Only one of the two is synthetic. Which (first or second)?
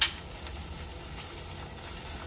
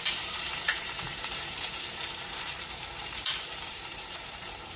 second